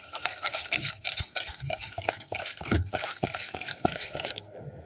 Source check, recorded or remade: remade